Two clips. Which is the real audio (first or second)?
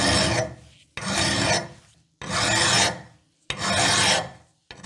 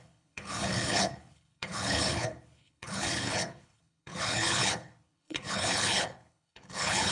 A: first